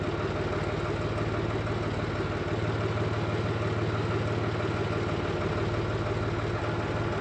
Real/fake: real